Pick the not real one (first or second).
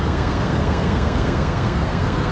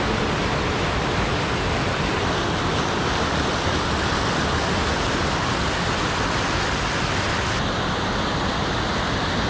first